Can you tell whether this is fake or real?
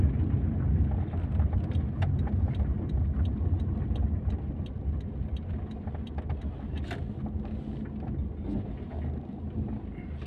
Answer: real